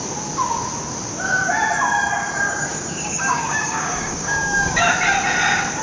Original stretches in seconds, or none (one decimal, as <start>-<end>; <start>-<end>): 0.0-2.7; 4.9-5.8